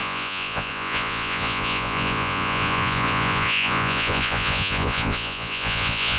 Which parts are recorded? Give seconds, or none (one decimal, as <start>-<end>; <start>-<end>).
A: none